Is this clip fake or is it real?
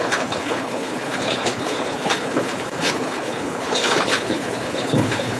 fake